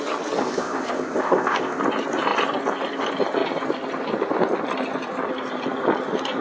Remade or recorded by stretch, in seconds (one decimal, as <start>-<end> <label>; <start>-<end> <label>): 0.0-0.4 recorded; 0.4-1.8 remade; 1.8-6.4 recorded